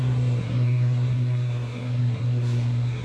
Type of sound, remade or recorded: remade